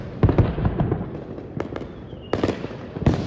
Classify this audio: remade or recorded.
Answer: recorded